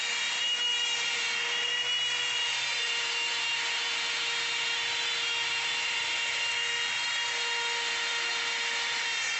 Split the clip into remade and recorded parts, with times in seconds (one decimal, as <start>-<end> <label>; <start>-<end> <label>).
0.0-9.4 recorded